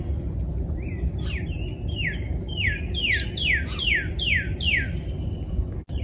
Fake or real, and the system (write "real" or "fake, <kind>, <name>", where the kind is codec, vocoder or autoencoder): real